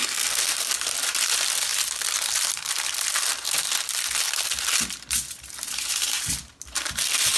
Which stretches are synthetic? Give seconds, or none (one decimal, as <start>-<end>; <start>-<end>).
0.0-0.7